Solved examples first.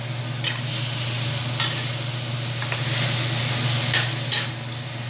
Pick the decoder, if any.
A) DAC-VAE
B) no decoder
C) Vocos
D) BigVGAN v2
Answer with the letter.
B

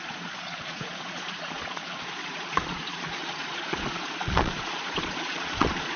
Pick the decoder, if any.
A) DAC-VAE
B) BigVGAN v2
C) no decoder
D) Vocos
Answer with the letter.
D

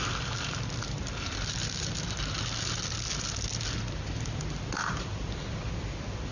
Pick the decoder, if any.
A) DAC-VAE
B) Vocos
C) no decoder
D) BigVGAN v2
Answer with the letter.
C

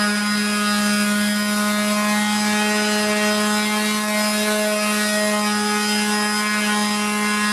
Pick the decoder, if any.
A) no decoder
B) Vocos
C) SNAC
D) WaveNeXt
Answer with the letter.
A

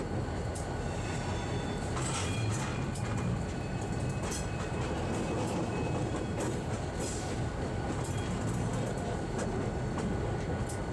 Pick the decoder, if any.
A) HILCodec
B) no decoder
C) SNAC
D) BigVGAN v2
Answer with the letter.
B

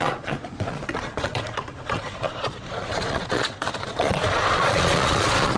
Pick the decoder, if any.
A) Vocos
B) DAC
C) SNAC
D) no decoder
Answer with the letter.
A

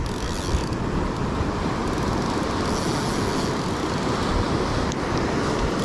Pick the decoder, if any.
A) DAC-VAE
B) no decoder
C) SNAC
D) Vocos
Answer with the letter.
B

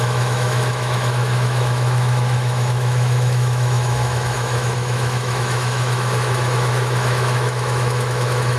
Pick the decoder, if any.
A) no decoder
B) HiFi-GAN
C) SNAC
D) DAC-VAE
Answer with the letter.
D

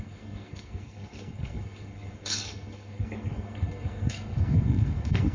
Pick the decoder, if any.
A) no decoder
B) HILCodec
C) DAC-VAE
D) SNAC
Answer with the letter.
D